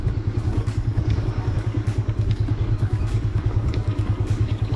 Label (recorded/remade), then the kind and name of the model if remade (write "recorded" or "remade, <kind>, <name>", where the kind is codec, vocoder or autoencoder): remade, codec, DAC